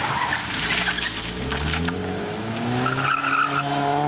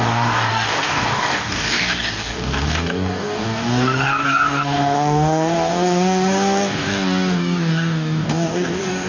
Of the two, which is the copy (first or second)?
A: second